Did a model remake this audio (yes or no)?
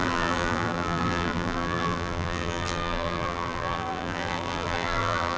yes